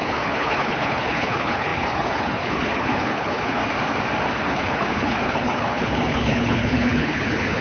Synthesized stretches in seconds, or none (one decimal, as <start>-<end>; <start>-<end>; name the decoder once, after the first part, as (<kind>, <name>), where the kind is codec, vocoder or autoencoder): 0.0-3.6 (codec, HILCodec); 4.4-7.6